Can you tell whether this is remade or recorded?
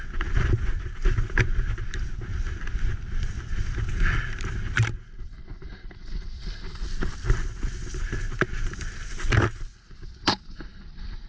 recorded